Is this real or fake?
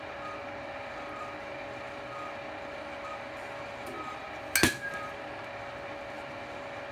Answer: real